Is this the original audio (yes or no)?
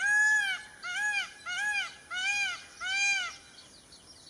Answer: yes